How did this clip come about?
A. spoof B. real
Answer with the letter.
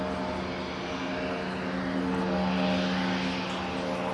B